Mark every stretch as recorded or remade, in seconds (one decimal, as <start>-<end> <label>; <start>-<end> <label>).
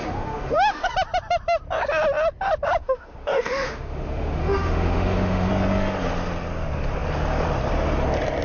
0.0-0.9 remade; 0.9-2.8 recorded; 2.8-5.5 remade; 5.5-8.4 recorded